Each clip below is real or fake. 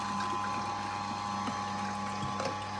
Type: real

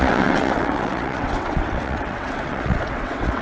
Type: fake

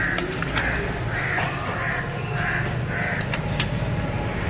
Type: real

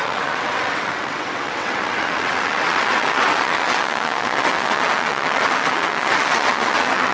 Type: fake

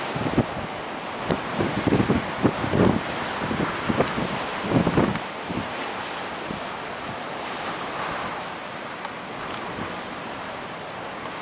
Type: real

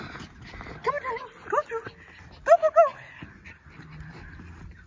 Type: real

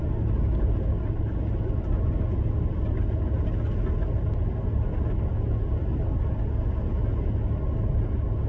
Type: real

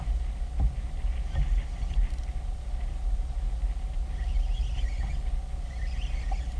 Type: real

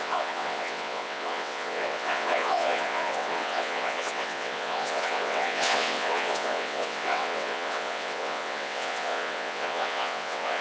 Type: fake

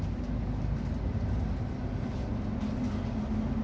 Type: real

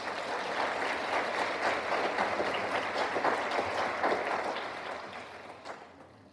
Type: real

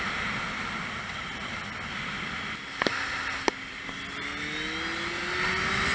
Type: real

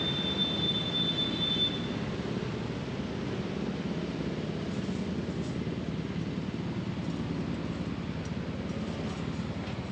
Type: real